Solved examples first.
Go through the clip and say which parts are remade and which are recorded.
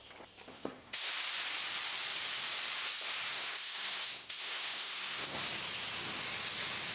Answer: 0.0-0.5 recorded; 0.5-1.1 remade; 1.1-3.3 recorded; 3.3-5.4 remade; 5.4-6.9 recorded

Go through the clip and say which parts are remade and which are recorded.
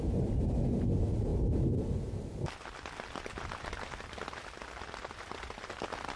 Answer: 0.0-6.2 recorded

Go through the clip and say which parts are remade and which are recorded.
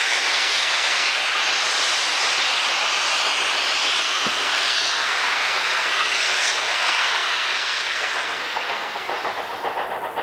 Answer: 0.0-1.2 remade; 1.2-4.0 recorded; 4.0-9.1 remade; 9.1-10.2 recorded